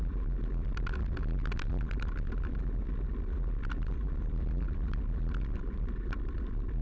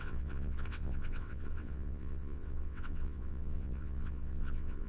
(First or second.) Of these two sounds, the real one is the first